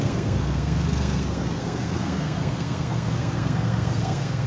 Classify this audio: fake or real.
fake